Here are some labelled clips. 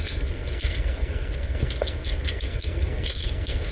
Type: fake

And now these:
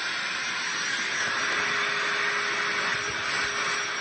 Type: real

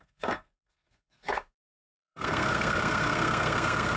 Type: fake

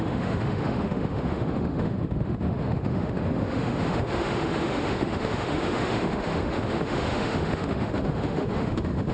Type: fake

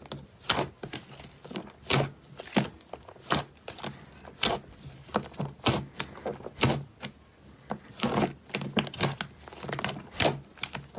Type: real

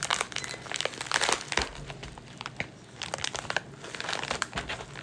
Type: real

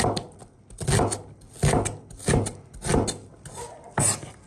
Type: real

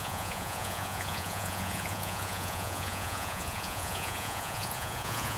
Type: fake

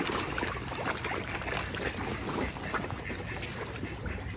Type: real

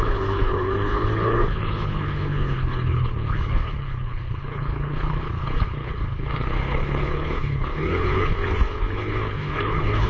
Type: fake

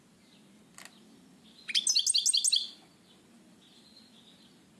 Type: real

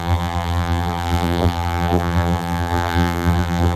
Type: fake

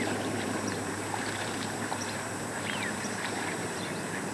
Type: fake